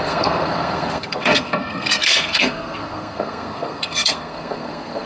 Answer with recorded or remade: remade